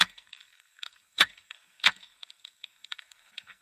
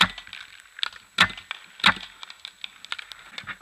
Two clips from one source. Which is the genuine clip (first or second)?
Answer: second